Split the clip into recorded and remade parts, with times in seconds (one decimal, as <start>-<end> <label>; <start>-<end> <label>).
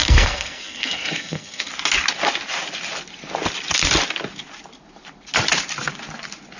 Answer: 0.0-1.7 remade; 1.7-6.6 recorded